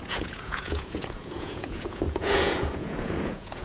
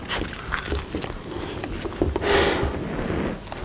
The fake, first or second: first